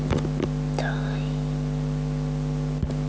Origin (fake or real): real